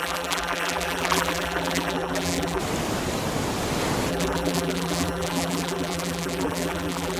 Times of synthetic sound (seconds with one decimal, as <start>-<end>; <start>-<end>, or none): 0.0-2.6; 4.1-7.2